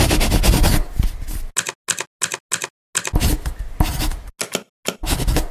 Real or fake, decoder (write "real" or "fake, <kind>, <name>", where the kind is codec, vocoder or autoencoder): real